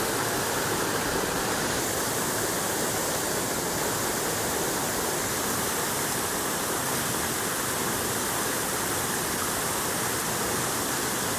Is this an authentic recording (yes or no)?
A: yes